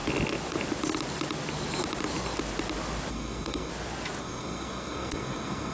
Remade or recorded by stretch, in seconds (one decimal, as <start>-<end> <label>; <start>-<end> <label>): 0.0-3.1 recorded; 3.1-3.7 remade; 3.7-4.2 recorded; 4.2-5.7 remade